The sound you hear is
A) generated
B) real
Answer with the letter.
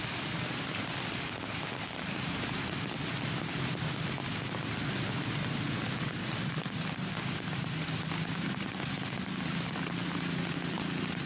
B